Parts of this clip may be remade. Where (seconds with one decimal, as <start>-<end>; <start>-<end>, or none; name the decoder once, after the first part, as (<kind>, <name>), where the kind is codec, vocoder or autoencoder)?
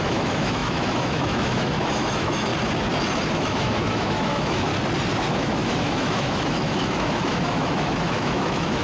0.0-2.5 (autoencoder, DAC-VAE); 3.3-4.7; 5.3-8.8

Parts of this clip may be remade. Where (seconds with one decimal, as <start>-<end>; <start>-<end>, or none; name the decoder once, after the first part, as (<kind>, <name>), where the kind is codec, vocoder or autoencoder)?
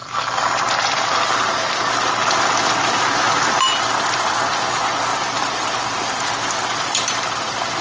0.0-1.1 (vocoder, BigVGAN v2); 2.2-3.6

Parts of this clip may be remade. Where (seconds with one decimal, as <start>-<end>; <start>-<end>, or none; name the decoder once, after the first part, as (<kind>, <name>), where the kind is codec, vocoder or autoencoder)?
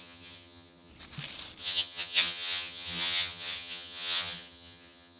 0.0-0.9 (vocoder, HiFi-GAN); 1.6-5.2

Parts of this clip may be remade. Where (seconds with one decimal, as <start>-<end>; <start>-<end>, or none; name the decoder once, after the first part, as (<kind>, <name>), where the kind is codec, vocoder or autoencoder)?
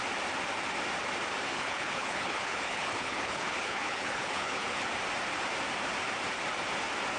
1.5-4.9 (codec, HILCodec)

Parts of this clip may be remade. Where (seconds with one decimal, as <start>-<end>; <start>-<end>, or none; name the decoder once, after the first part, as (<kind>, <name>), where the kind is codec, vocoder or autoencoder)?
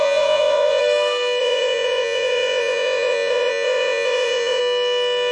0.0-0.8 (vocoder, Vocos); 1.4-4.6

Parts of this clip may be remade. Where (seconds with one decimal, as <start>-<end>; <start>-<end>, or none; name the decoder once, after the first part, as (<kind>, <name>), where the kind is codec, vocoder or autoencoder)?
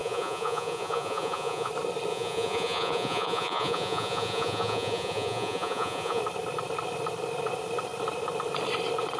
0.0-1.7 (vocoder, Vocos); 2.1-6.2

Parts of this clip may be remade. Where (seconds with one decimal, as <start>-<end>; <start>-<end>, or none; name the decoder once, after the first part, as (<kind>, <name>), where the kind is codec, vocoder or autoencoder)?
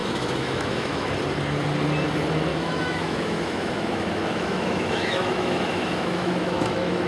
0.0-1.1 (autoencoder, DAC-VAE); 2.5-7.1